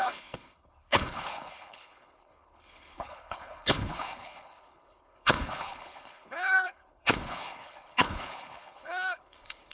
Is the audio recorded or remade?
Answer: remade